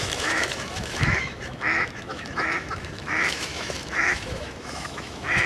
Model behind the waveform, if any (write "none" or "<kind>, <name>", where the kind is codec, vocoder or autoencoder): autoencoder, DAC-VAE